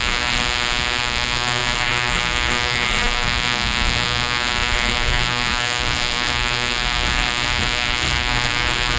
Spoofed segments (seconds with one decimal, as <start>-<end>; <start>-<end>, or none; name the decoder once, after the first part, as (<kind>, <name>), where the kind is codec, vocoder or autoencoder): 0.0-0.4 (codec, SNAC); 1.0-9.0